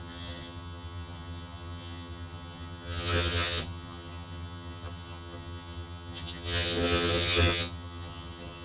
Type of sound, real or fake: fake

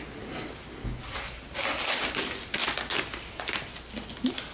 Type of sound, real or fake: real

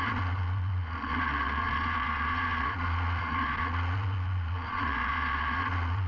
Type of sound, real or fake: fake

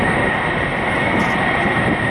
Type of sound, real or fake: real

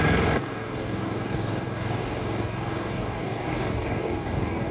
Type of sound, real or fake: fake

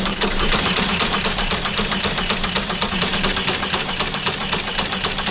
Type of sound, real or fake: fake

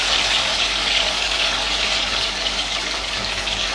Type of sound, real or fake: fake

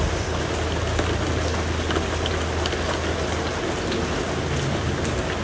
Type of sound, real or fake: real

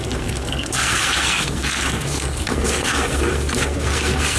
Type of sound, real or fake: fake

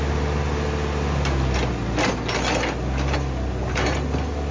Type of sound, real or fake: real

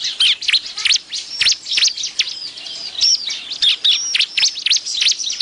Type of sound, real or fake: real